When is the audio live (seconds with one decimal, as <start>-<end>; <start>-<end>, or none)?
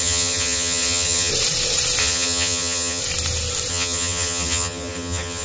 1.3-2.0; 3.0-3.7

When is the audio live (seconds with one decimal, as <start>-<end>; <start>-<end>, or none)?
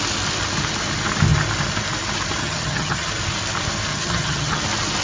0.0-2.4; 3.1-3.9; 4.6-5.0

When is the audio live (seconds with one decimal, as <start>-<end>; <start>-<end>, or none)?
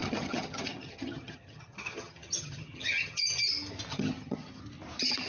3.2-3.9; 4.6-5.3